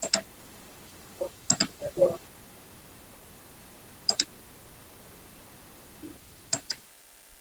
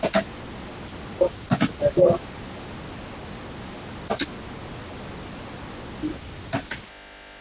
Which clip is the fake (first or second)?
first